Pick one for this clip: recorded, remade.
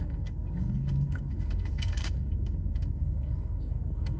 remade